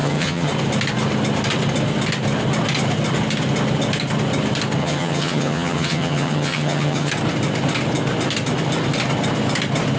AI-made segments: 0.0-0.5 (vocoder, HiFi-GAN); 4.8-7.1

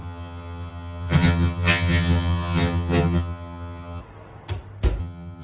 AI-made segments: 0.0-4.0 (vocoder, HiFi-GAN); 5.0-5.4

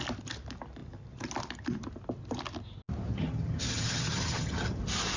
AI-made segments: 3.1-4.8 (vocoder, HiFi-GAN)

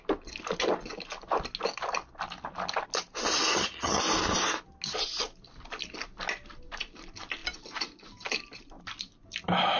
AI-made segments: 3.5-4.0 (vocoder, HiFi-GAN)

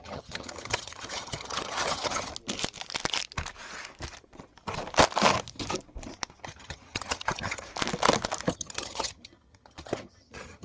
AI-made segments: 0.0-2.3 (vocoder, HiFi-GAN); 6.4-7.7; 8.5-10.6

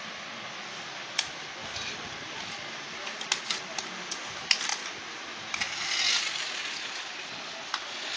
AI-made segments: none

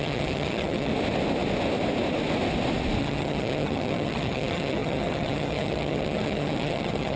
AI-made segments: 0.0-0.9 (vocoder, HiFi-GAN); 3.0-7.2

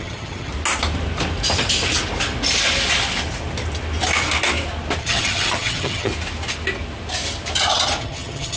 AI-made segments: 0.0-0.5 (vocoder, HiFi-GAN); 5.0-6.1; 8.0-8.6